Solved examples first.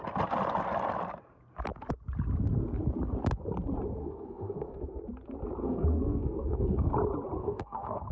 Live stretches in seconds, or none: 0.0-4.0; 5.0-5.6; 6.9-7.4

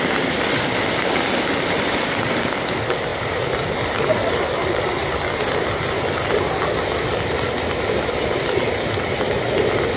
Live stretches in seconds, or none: 0.0-10.0